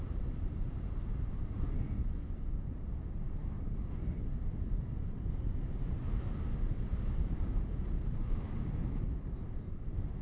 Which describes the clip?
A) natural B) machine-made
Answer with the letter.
A